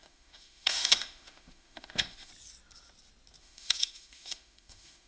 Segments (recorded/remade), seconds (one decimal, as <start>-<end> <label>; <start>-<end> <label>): 0.0-2.3 remade; 2.3-3.4 recorded; 3.4-5.1 remade